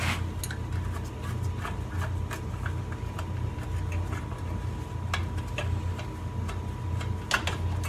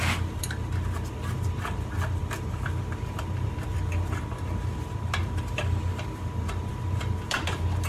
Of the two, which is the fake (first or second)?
second